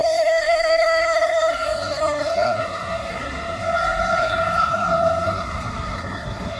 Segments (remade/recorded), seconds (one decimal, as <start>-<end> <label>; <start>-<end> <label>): 0.0-6.6 remade